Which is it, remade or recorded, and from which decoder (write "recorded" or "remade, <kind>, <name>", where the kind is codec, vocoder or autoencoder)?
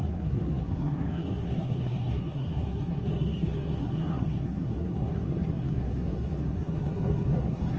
remade, codec, SNAC